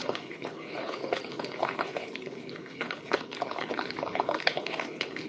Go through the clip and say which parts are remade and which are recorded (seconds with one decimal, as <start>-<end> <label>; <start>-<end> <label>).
0.0-5.3 remade